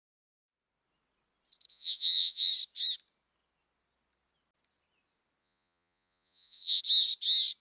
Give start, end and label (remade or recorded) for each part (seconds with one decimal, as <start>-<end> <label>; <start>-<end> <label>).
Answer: 0.0-1.7 recorded; 1.7-2.5 remade; 2.5-5.4 recorded; 5.4-6.8 remade; 6.8-7.6 recorded